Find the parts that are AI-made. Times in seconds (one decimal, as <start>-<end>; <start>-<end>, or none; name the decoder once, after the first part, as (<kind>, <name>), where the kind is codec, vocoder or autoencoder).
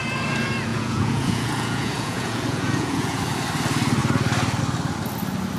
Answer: 0.7-3.2 (vocoder, Vocos)